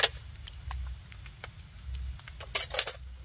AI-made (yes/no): no